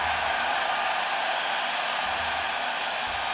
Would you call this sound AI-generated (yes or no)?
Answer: no